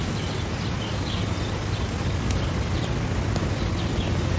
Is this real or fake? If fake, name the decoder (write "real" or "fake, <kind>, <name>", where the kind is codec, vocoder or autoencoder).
real